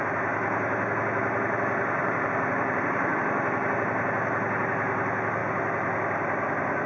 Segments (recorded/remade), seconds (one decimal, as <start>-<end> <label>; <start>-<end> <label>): 0.0-2.0 recorded; 2.0-2.8 remade; 2.8-6.9 recorded

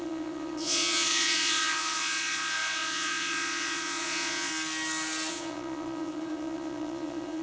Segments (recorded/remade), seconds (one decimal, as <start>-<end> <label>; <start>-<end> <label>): 0.0-4.5 remade; 4.5-5.3 recorded; 5.3-7.4 remade

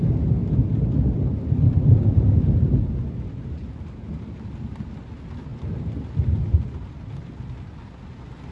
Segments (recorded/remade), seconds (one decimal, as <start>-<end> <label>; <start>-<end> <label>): 0.0-5.5 recorded; 5.5-7.0 remade; 7.0-8.5 recorded

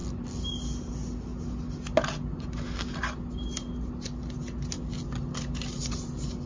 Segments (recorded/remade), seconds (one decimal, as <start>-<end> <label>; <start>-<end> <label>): 0.0-6.5 recorded